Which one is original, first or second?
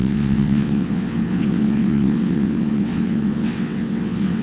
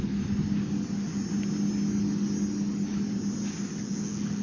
second